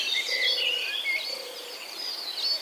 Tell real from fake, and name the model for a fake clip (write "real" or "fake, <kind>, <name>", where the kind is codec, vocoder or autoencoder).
fake, vocoder, BigVGAN v2